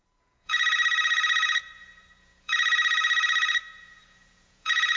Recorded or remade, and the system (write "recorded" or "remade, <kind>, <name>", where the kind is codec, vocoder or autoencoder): remade, vocoder, Vocos